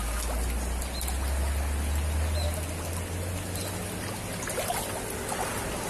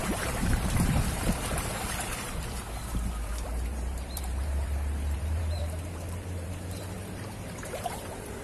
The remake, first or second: second